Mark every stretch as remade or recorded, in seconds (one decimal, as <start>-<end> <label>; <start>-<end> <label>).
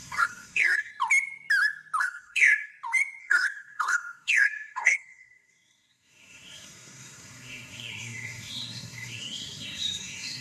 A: 0.0-0.9 remade; 0.9-2.0 recorded; 2.0-2.7 remade; 2.7-3.2 recorded; 3.2-10.4 remade